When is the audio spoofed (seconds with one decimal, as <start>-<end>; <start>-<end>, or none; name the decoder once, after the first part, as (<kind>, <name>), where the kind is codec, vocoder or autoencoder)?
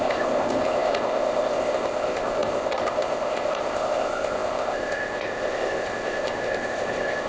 0.0-7.3 (codec, ZipCodec)